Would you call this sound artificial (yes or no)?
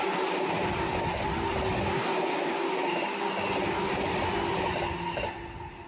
no